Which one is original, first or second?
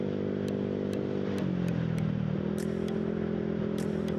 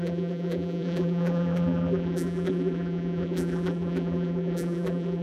first